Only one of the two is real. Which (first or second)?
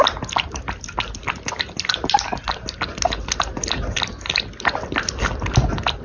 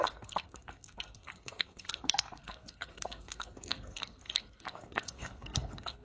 first